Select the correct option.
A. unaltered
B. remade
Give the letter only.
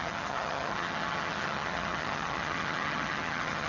B